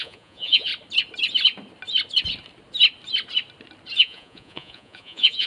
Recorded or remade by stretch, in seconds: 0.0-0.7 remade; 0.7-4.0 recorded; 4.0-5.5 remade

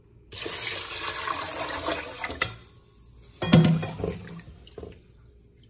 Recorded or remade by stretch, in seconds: 0.0-5.7 recorded

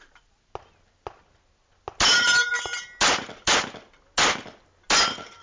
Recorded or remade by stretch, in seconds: 0.0-5.4 recorded

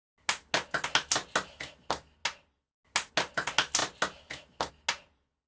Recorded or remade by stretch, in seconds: 0.0-5.5 recorded

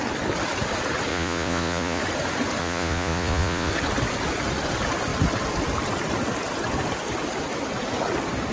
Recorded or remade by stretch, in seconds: 0.0-1.1 recorded; 1.1-2.0 remade; 2.0-2.6 recorded; 2.6-3.7 remade; 3.7-8.5 recorded

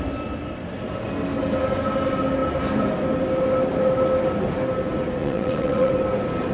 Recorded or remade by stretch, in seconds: 0.0-5.2 recorded; 5.2-5.9 remade; 5.9-6.5 recorded

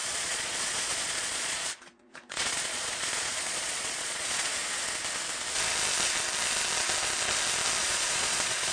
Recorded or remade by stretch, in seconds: 0.0-4.6 remade; 4.6-7.8 recorded; 7.8-8.7 remade

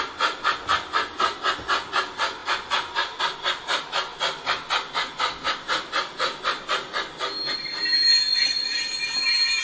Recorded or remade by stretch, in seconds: 0.0-9.6 recorded